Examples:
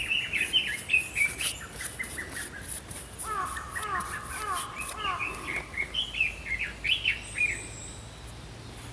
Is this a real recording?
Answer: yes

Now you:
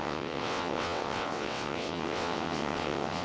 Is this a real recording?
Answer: no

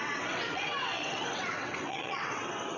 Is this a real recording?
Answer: no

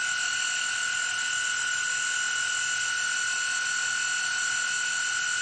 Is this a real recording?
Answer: yes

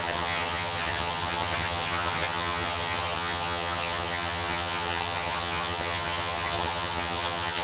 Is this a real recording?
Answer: no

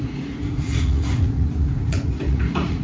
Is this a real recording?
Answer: no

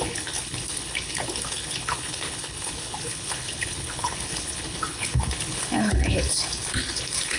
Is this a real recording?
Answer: no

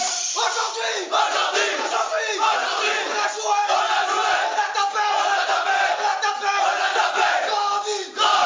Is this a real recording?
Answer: yes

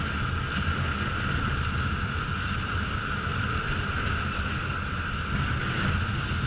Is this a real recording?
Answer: yes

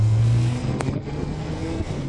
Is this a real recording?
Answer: no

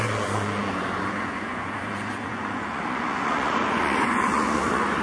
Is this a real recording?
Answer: no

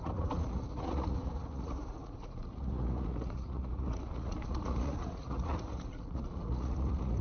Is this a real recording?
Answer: no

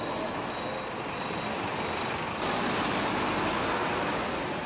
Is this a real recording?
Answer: yes